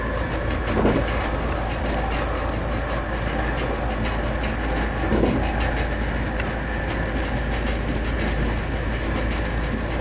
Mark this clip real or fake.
real